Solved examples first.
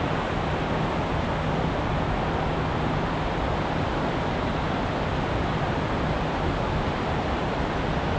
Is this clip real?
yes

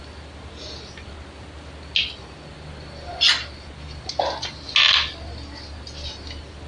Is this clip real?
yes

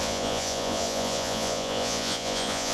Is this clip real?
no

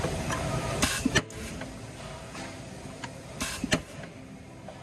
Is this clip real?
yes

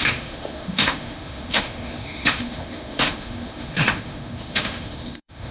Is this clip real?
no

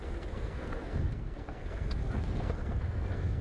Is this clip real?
no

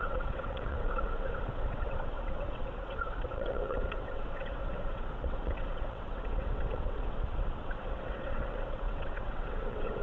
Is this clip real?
no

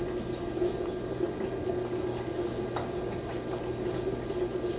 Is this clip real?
yes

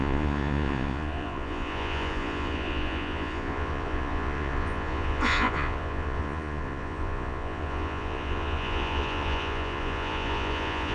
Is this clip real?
no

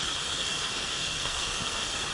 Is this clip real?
no